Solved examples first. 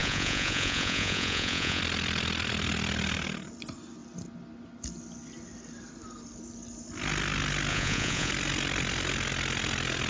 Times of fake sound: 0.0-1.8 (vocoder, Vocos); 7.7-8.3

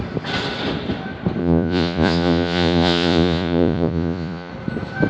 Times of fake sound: 1.4-4.5 (vocoder, Vocos)

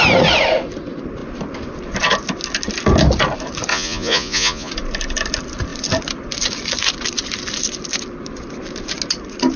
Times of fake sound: 3.7-4.7 (vocoder, Vocos)